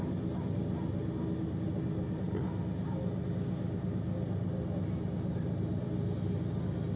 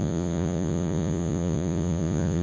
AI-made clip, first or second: second